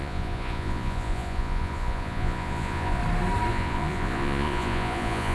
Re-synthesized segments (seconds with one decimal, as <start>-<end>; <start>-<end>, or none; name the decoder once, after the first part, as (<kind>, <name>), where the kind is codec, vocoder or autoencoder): 0.0-3.0 (vocoder, Vocos); 3.5-5.3